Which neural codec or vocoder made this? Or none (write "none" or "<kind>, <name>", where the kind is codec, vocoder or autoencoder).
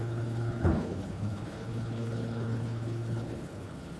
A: codec, HILCodec